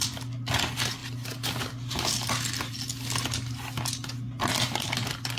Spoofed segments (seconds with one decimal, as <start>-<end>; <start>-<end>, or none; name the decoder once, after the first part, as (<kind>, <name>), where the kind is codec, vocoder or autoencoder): none